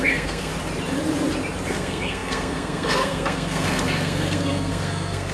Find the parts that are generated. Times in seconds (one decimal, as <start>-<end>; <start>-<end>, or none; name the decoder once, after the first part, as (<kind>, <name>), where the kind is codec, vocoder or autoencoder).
0.0-0.5 (codec, SNAC); 1.7-5.3